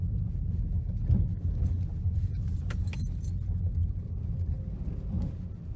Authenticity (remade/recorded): recorded